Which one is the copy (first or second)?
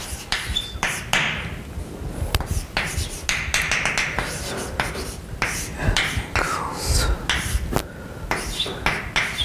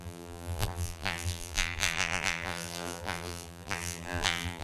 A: second